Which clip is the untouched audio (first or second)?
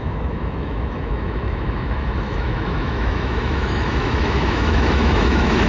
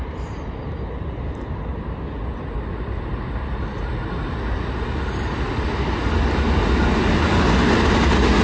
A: second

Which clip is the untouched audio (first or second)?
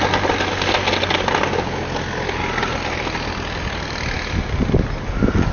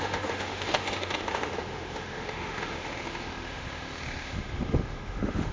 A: first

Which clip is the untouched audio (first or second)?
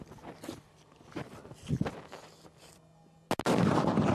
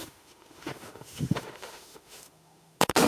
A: first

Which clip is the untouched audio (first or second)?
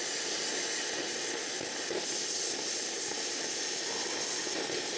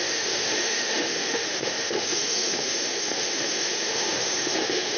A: first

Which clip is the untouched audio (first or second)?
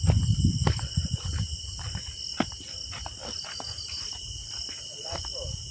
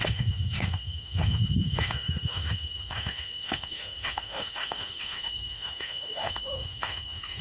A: first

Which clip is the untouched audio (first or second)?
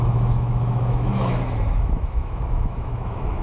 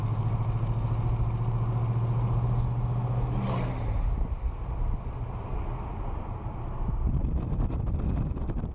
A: second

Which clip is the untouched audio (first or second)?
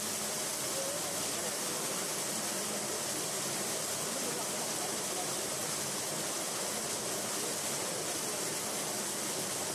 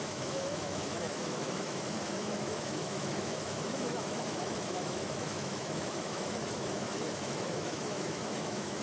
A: first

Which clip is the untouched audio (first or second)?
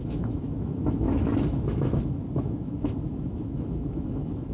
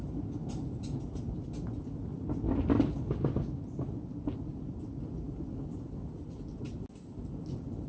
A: second